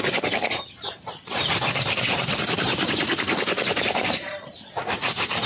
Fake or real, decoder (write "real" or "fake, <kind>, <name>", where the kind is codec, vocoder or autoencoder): fake, vocoder, BigVGAN v2